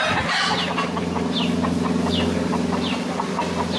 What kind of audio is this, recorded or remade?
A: recorded